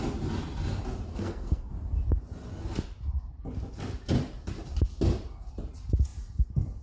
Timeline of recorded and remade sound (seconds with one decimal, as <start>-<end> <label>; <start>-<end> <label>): 0.0-1.1 recorded; 1.1-1.7 remade; 1.7-6.8 recorded